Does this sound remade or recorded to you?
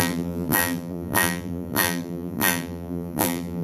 remade